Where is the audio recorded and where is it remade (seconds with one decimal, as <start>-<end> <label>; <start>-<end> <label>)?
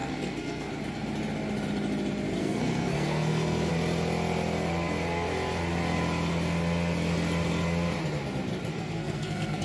0.0-0.7 remade; 0.7-2.4 recorded; 2.4-3.7 remade; 3.7-8.7 recorded; 8.7-9.6 remade